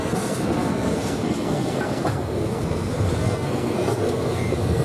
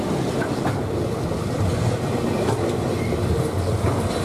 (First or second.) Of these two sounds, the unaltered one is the second